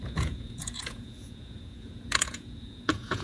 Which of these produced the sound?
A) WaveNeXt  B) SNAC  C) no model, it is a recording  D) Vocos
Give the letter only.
D